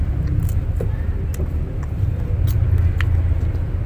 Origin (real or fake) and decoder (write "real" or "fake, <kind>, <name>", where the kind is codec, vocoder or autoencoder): real